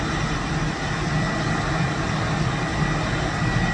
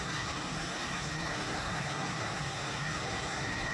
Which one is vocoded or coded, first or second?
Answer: second